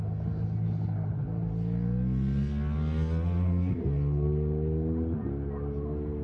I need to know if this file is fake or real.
real